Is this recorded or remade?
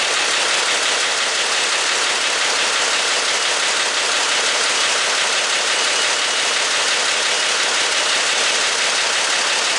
recorded